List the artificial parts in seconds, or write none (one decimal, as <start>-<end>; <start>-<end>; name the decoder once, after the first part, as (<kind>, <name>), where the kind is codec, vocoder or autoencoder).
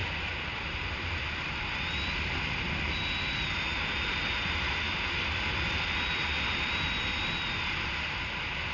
none